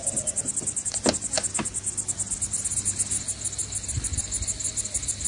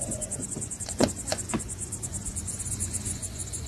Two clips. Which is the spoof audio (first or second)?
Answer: second